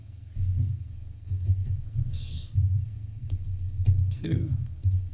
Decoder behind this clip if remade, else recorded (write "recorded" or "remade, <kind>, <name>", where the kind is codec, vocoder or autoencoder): remade, codec, SNAC